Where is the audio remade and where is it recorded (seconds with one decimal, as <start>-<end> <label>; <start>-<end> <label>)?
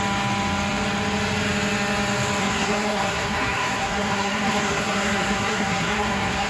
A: 0.0-2.4 recorded; 2.4-6.5 remade